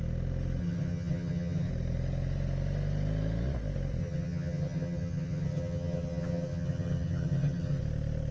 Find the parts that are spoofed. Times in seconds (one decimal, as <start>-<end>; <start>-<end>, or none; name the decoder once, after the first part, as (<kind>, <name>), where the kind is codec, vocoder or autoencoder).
0.6-1.7 (vocoder, HiFi-GAN); 4.0-7.8